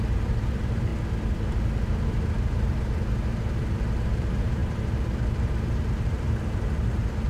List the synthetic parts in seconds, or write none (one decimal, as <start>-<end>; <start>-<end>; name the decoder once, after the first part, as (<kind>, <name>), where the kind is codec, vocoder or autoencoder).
0.0-0.9 (vocoder, BigVGAN v2); 2.1-7.3